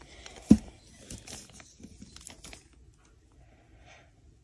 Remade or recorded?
recorded